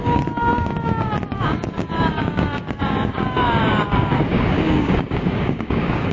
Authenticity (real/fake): fake